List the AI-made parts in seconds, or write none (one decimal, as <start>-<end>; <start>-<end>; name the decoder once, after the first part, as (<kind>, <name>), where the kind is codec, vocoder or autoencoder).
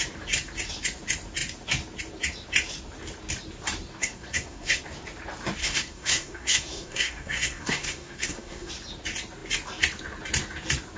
4.0-4.8 (codec, SNAC); 5.6-8.7